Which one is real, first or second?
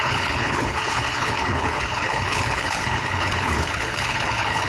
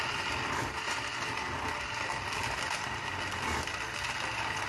second